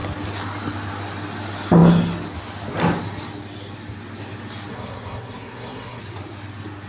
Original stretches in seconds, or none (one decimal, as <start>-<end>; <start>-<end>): 0.0-4.7; 6.0-6.9